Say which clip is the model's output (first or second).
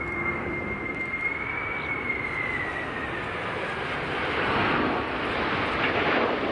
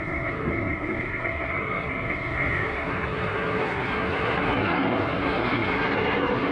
second